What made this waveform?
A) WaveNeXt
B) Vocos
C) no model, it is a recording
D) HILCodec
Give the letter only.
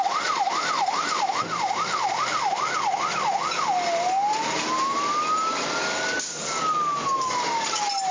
C